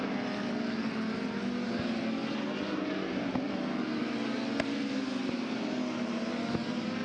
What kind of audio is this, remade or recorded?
recorded